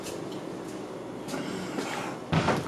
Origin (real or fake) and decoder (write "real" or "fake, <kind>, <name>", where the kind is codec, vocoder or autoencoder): real